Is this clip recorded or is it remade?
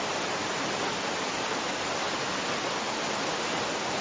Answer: recorded